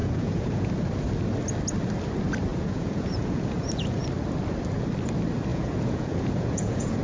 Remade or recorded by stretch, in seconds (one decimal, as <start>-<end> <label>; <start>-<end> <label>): 0.0-0.7 remade; 0.7-2.5 recorded; 2.5-4.0 remade; 4.0-5.5 recorded; 5.5-7.0 remade